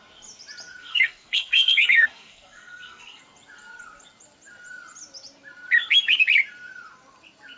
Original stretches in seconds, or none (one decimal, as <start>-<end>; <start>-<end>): 0.0-0.8; 3.2-7.6